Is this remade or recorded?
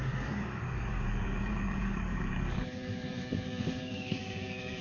remade